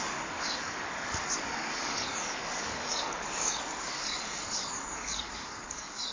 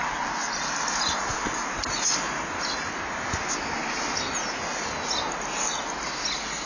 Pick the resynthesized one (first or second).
first